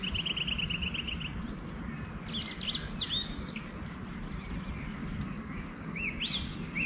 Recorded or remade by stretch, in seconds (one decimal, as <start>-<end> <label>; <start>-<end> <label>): 0.0-5.0 recorded; 5.0-6.2 remade; 6.2-6.9 recorded